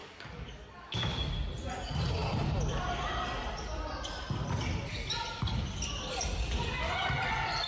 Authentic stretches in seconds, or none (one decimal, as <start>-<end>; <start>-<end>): 1.3-7.7